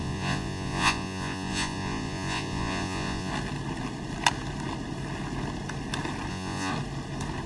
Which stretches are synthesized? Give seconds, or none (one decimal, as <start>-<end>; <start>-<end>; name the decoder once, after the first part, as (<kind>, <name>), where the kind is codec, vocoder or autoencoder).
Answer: 0.0-3.3 (vocoder, Vocos); 6.3-6.7